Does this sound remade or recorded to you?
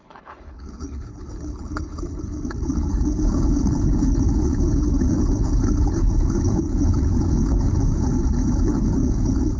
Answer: remade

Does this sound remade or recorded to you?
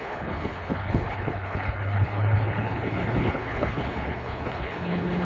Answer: remade